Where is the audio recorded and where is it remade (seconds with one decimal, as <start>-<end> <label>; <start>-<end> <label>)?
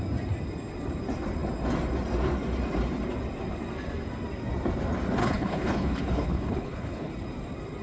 0.0-5.2 recorded; 5.2-7.1 remade; 7.1-7.8 recorded